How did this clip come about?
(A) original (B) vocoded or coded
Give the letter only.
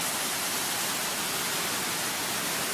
A